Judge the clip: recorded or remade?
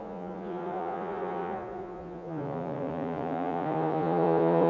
remade